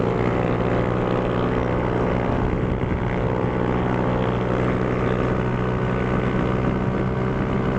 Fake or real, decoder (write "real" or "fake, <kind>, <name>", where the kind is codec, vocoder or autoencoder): real